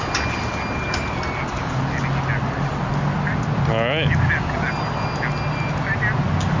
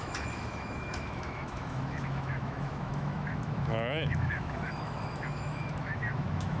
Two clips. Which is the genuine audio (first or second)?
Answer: first